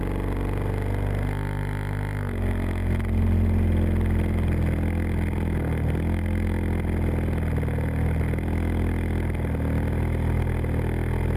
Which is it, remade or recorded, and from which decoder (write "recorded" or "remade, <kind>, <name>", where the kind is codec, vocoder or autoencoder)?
recorded